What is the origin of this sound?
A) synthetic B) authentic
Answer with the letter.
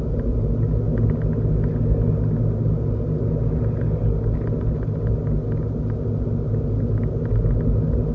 B